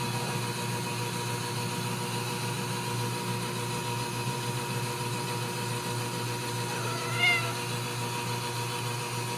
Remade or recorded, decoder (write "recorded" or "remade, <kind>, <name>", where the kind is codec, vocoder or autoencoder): recorded